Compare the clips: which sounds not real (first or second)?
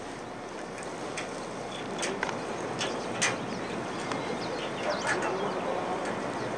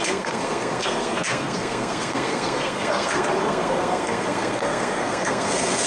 second